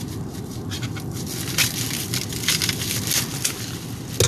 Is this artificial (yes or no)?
no